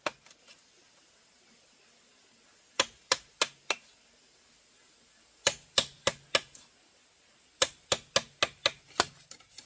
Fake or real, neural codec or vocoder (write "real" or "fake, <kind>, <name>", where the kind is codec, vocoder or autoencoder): real